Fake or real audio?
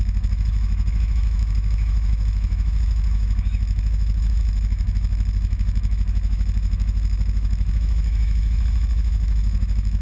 fake